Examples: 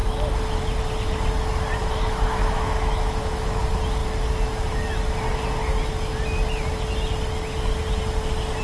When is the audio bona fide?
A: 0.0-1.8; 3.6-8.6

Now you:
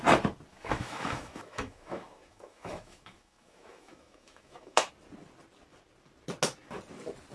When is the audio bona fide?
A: 0.0-0.5; 4.9-7.3

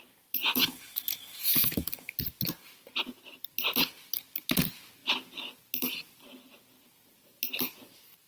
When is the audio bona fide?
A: 0.0-0.4; 2.1-8.3

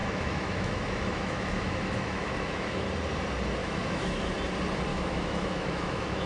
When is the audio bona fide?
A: 2.9-3.6; 4.3-4.9

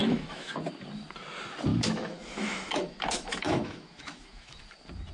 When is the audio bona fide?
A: 0.6-1.7; 4.6-5.1

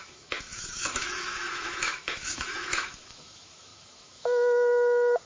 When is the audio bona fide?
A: none